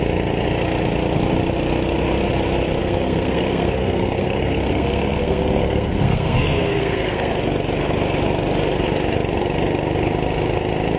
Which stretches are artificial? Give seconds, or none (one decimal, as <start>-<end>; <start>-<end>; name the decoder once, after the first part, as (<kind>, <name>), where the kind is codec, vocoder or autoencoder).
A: 2.8-7.3 (codec, SNAC)

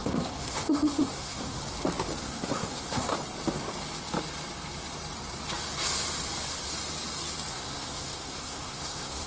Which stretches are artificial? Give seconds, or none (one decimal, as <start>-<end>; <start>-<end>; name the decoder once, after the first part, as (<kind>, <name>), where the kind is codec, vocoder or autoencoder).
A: 0.0-1.6 (codec, SNAC); 2.2-3.1; 7.5-9.3

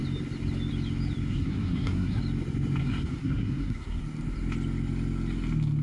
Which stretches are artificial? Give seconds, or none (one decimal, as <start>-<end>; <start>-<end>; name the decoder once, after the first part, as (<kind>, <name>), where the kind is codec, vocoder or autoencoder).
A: 1.3-2.2 (codec, SNAC); 2.8-4.0

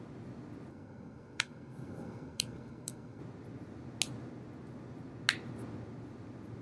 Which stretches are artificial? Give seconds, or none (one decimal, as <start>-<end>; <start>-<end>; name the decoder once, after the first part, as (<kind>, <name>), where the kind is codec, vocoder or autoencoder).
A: 0.7-3.2 (codec, SNAC)

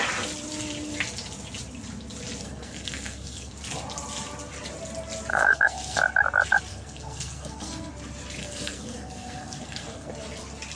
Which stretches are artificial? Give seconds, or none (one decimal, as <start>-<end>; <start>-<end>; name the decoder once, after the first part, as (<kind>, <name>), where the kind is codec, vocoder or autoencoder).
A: 2.4-3.5 (codec, SNAC); 5.3-6.0; 6.7-7.9; 8.4-10.1

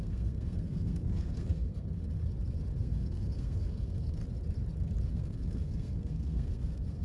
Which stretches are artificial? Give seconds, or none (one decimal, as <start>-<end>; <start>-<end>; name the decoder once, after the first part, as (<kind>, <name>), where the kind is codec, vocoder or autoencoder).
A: 0.0-2.0 (codec, SNAC); 2.8-4.2; 5.1-7.0

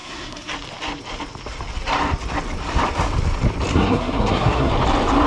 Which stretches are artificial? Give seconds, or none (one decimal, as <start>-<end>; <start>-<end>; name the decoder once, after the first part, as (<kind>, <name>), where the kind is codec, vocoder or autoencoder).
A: 0.0-0.5 (codec, SNAC); 3.7-4.7

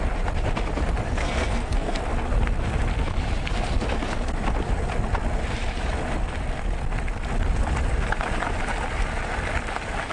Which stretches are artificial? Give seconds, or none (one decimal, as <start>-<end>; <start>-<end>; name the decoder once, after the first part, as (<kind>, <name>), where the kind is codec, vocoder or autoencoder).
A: 1.2-2.0 (codec, SNAC)